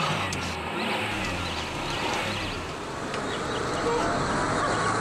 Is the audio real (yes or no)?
yes